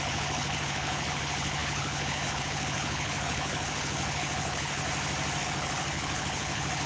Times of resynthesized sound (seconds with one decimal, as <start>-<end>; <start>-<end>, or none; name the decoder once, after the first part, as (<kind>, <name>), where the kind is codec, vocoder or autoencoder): 0.0-4.8 (codec, HILCodec); 5.4-6.9